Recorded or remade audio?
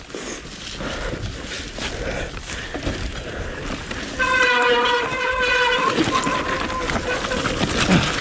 recorded